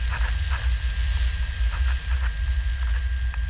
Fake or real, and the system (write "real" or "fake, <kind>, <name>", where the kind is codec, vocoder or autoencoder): real